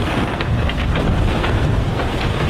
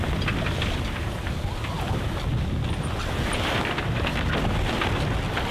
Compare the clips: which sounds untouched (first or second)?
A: second